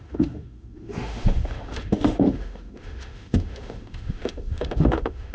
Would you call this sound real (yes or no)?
no